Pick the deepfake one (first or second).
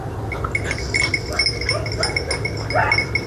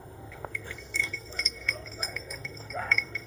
second